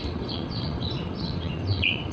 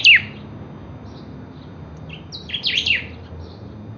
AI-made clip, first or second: first